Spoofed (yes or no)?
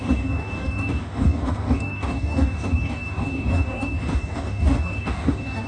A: yes